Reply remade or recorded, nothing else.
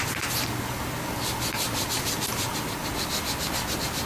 recorded